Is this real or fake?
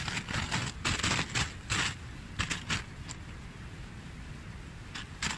real